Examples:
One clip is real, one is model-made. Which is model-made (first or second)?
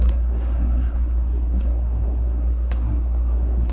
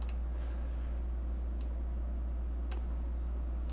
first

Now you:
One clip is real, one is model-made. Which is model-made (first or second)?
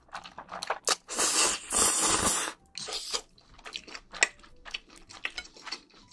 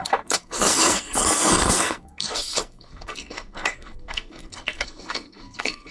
second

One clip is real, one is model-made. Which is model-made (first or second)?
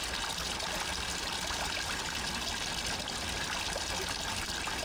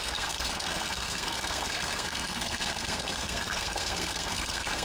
second